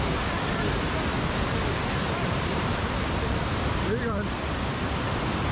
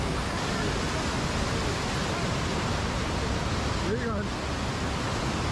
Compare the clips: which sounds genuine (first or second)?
second